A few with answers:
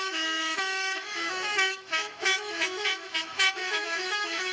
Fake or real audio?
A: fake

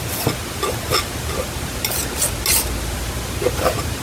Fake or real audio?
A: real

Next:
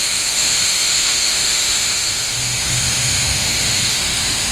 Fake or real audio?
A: fake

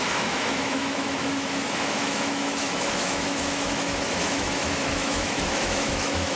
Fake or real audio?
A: fake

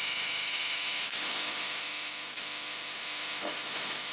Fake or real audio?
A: fake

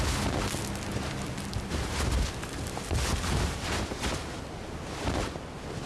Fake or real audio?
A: real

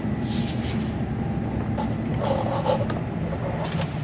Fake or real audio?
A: real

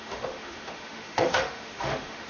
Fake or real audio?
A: fake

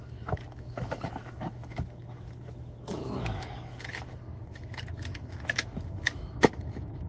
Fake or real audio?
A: fake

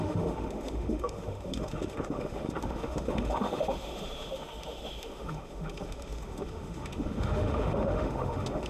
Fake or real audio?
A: fake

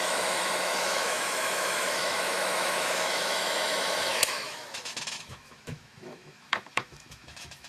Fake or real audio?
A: fake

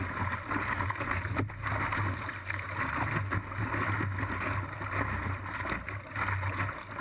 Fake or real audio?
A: real